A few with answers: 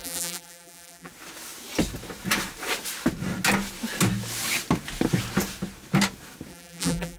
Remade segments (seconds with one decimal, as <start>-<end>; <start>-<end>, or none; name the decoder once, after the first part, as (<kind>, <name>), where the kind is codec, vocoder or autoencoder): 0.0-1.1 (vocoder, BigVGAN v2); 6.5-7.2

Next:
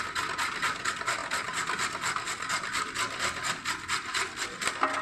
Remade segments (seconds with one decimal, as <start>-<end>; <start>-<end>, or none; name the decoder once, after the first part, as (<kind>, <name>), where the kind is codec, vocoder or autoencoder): none

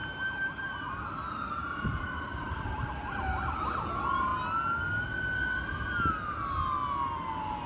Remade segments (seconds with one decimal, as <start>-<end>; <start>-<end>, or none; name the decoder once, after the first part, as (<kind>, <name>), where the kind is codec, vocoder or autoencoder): 1.6-2.7 (vocoder, BigVGAN v2)

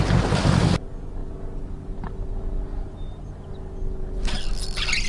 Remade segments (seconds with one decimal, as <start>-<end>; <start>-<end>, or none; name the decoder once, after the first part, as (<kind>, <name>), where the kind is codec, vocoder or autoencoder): none

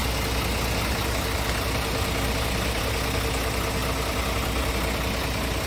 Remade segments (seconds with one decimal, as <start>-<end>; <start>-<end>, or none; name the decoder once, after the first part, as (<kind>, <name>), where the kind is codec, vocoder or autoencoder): none

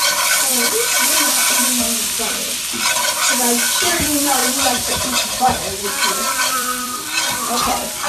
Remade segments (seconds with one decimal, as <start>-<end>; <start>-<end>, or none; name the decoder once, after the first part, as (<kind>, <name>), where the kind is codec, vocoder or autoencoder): 0.0-0.5 (vocoder, BigVGAN v2); 3.9-8.1

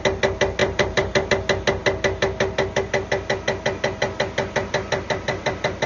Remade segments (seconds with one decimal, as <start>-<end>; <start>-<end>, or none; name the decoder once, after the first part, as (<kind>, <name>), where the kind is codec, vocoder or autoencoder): 0.6-1.3 (vocoder, BigVGAN v2)

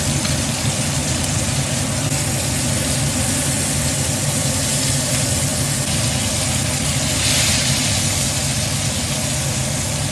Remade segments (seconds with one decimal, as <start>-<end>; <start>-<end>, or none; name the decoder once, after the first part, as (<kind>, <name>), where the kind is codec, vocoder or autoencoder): 1.0-1.8 (vocoder, BigVGAN v2)